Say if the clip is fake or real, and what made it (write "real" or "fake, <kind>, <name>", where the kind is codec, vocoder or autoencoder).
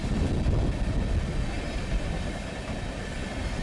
real